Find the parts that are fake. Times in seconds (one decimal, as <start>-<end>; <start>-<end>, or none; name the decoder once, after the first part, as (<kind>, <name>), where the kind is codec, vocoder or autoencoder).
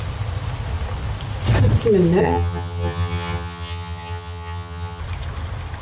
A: 2.2-5.0 (vocoder, HiFi-GAN)